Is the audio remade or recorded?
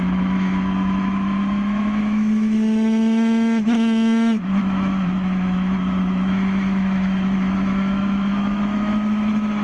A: remade